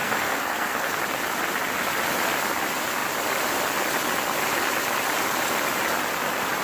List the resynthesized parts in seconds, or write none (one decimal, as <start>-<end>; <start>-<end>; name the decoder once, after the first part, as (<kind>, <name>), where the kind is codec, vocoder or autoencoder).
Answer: 0.0-1.0 (codec, SNAC)